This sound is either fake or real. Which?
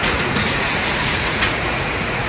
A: fake